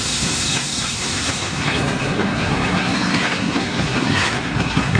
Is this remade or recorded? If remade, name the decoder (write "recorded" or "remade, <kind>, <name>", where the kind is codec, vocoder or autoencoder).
remade, codec, SNAC